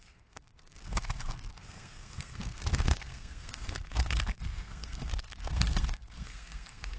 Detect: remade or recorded remade